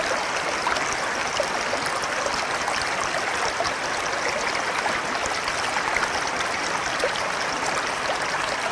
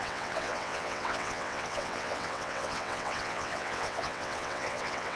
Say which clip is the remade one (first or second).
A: second